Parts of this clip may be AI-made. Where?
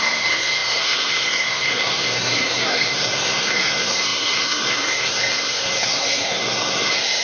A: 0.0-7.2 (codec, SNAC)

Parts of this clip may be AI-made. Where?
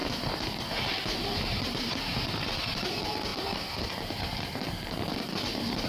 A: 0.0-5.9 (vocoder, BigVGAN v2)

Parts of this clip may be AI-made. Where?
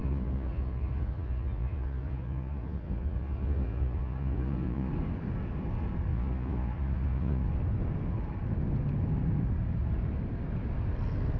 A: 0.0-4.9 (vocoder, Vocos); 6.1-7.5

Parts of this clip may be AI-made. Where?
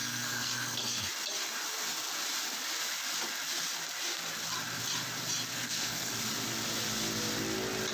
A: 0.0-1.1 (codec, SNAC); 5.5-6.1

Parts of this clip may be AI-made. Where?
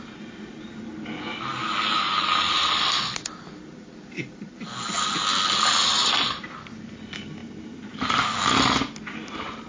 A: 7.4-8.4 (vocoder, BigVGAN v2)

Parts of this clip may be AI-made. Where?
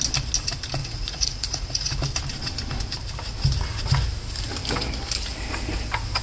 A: 0.8-1.9 (vocoder, Vocos)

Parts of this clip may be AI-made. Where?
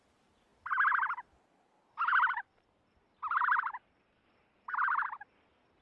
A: 2.1-4.1 (vocoder, BigVGAN v2)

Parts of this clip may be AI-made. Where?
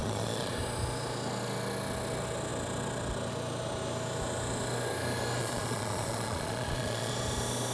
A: 0.0-0.5 (vocoder, Vocos); 5.4-7.1